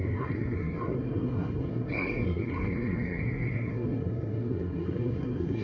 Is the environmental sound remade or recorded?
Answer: remade